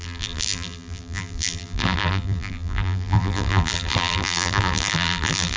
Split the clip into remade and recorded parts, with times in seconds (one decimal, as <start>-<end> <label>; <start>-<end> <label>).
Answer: 0.0-5.6 remade